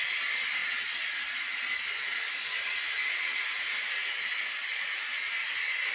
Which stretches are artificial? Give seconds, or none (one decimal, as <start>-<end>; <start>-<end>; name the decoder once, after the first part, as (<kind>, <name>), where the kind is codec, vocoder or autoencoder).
none